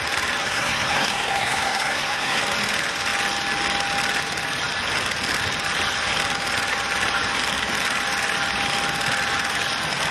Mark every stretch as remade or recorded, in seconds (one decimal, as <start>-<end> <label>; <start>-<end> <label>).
0.0-0.4 recorded; 0.4-2.4 remade; 2.4-10.1 recorded